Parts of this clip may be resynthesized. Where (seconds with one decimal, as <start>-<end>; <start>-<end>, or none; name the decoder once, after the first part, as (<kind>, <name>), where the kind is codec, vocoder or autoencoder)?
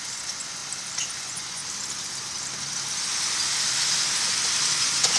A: 0.0-0.6 (vocoder, Vocos); 1.2-1.6; 4.7-5.2